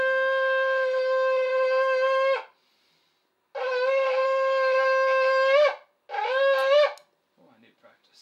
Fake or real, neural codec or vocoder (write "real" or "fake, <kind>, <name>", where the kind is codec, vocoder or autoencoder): real